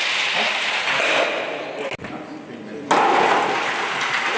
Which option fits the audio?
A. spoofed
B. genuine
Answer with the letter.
B